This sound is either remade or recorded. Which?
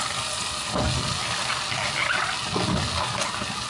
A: recorded